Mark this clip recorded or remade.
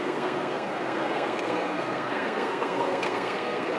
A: remade